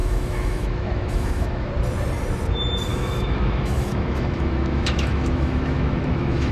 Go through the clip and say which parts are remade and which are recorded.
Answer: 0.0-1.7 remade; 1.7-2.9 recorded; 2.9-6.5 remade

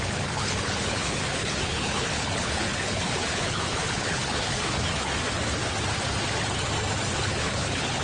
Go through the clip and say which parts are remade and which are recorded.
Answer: 0.0-5.1 remade; 5.1-7.1 recorded; 7.1-8.0 remade

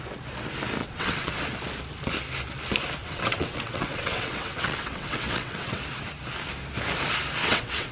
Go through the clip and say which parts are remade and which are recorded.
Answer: 0.0-0.8 recorded; 0.8-1.3 remade; 1.3-3.0 recorded; 3.0-5.8 remade; 5.8-7.4 recorded; 7.4-7.9 remade